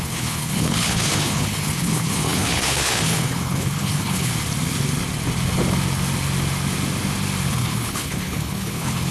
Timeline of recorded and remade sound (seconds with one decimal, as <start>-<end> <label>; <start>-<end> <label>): 0.0-4.3 remade; 4.3-7.5 recorded; 7.5-9.1 remade